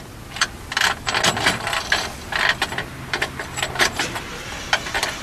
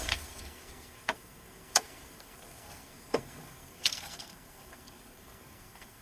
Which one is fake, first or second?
second